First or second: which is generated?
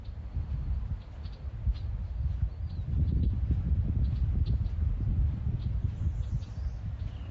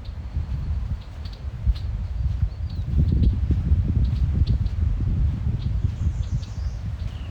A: second